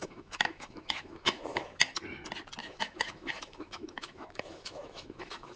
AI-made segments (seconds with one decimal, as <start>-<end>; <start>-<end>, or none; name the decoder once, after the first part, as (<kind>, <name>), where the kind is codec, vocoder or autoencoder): 0.0-1.8 (autoencoder, DAC-VAE); 2.6-5.6